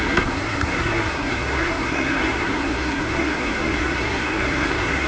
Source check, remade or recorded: remade